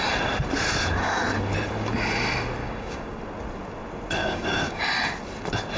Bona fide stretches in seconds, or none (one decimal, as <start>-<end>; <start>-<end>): 0.0-2.6; 3.2-4.2; 4.8-5.8